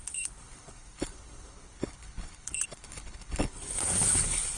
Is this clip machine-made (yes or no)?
yes